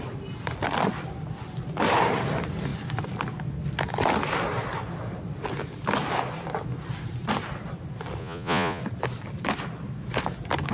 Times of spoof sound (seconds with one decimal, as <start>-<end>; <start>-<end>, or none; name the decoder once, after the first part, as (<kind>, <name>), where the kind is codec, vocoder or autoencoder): 8.2-8.8 (vocoder, Vocos)